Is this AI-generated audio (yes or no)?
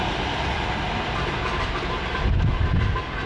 no